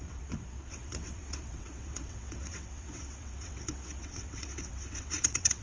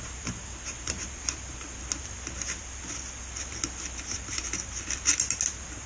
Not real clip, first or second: first